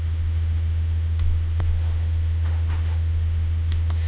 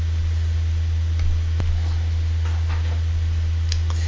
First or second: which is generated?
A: first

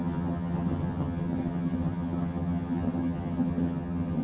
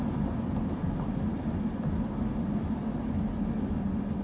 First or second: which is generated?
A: first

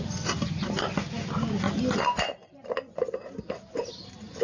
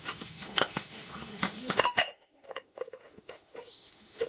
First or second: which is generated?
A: second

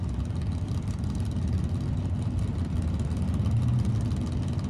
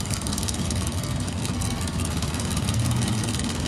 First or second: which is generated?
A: second